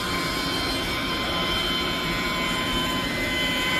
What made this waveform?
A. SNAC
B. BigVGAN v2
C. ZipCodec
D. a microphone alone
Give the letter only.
B